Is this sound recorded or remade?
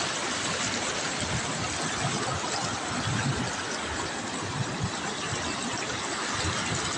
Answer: recorded